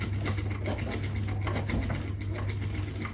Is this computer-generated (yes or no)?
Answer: no